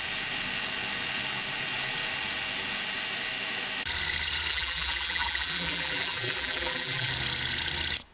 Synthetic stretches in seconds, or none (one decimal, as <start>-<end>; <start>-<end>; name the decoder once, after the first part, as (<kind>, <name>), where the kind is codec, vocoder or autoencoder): 4.5-7.1 (vocoder, BigVGAN v2)